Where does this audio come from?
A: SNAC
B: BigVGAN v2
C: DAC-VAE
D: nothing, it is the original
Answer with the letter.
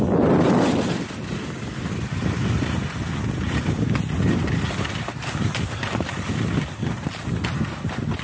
D